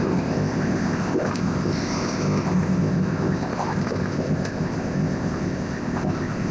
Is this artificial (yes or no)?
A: yes